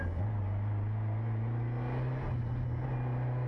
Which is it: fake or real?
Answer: real